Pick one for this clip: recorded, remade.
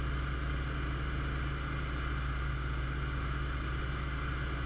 recorded